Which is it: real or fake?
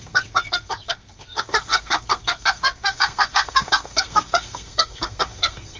fake